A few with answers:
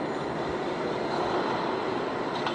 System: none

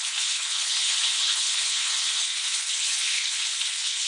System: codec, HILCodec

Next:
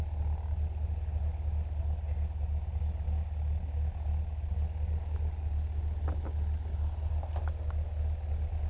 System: none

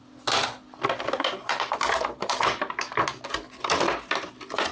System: none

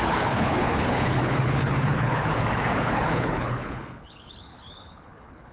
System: codec, HILCodec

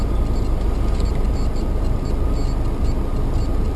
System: none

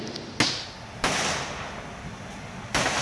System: none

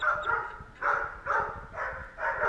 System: none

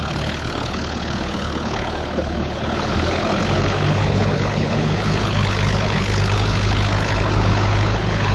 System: codec, HILCodec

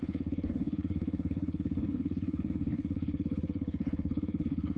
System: codec, HILCodec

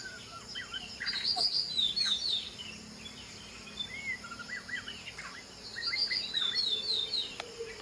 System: none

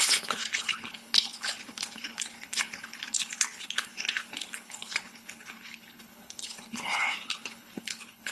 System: codec, HILCodec